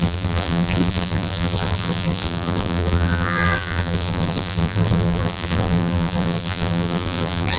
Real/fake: fake